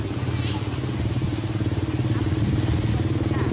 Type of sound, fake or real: real